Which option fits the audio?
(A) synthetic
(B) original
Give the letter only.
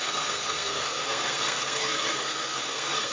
A